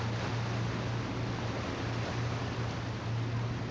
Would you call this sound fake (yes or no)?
no